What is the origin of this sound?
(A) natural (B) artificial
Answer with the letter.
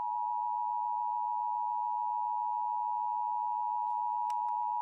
A